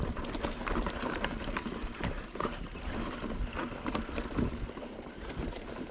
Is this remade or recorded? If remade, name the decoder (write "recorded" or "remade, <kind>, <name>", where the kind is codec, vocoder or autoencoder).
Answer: remade, vocoder, BigVGAN v2